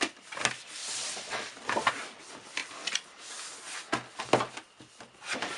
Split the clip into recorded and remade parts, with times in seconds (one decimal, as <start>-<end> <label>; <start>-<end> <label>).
0.0-0.8 recorded; 0.8-1.9 remade; 1.9-5.6 recorded